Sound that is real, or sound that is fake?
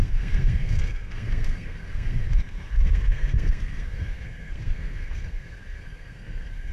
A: fake